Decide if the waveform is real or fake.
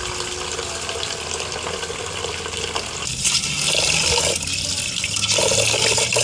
real